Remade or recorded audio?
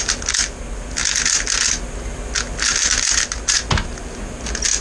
recorded